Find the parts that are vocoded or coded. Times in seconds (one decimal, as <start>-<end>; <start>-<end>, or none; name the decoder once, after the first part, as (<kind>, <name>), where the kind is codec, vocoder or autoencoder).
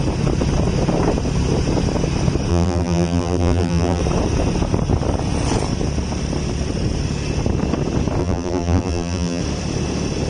2.5-4.0 (vocoder, BigVGAN v2); 8.2-9.4